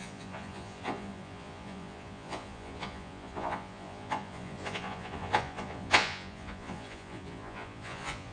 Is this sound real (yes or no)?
no